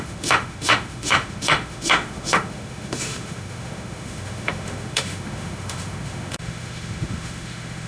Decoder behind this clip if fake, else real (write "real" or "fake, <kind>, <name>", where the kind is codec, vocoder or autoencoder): fake, autoencoder, DAC-VAE